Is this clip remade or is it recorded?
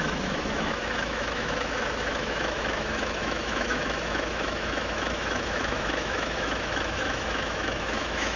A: remade